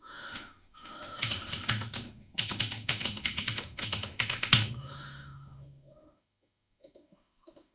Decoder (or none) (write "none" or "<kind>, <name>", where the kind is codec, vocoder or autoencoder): autoencoder, DAC-VAE